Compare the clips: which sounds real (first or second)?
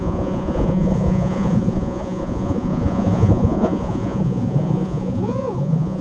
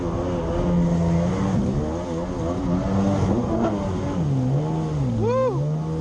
second